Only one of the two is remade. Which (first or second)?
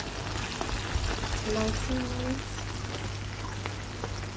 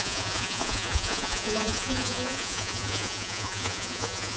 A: second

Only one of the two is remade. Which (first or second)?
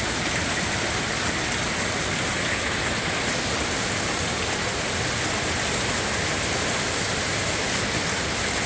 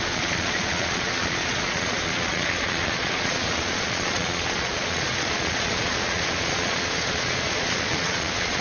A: second